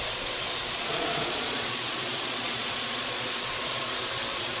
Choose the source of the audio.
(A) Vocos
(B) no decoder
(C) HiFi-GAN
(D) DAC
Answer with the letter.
A